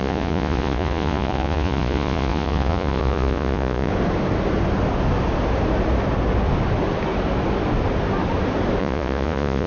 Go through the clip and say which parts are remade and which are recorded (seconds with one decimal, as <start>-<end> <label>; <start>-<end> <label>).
0.0-3.9 remade; 3.9-8.8 recorded; 8.8-9.7 remade